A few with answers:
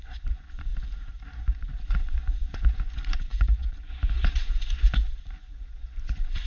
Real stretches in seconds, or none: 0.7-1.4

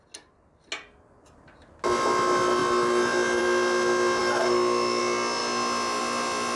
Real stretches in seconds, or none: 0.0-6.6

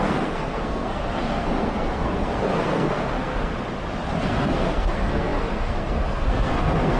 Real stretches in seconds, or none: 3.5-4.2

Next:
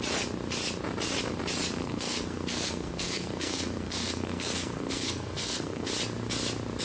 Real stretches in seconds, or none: 0.0-1.8; 5.9-6.8